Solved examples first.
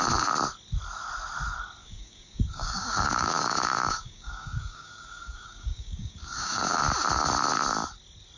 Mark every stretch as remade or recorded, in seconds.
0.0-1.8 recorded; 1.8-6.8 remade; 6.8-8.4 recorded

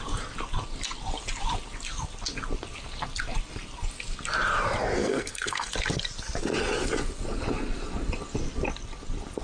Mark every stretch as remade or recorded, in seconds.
0.0-5.0 recorded; 5.0-5.7 remade; 5.7-9.4 recorded

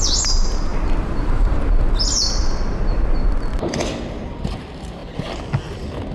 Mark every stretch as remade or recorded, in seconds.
0.0-0.7 recorded; 0.7-1.3 remade; 1.3-6.1 recorded

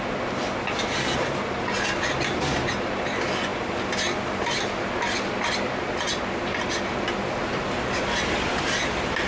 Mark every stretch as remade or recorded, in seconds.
0.0-9.3 recorded

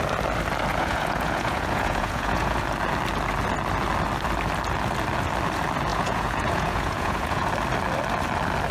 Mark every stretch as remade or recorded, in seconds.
0.0-0.7 recorded; 0.7-2.6 remade; 2.6-5.9 recorded; 5.9-7.5 remade; 7.5-8.7 recorded